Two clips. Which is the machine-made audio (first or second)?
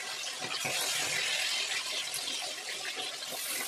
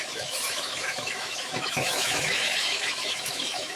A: second